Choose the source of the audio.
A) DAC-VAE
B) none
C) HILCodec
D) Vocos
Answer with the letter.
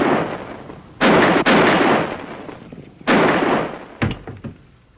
B